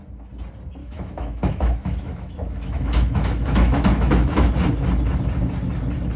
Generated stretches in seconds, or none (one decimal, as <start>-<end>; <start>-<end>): 0.8-4.5